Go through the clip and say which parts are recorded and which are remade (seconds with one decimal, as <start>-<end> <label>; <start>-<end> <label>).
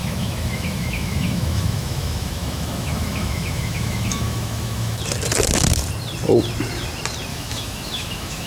0.0-5.0 remade; 5.0-7.3 recorded; 7.3-8.5 remade